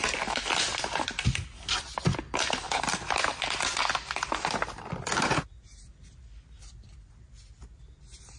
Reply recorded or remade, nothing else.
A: recorded